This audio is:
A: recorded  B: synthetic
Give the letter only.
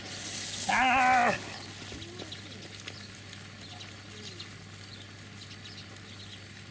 A